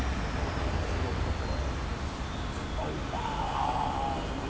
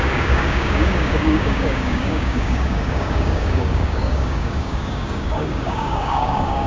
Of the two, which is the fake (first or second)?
second